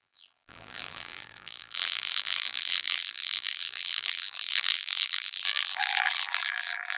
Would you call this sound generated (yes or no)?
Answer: yes